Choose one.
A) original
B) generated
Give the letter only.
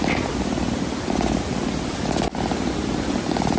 A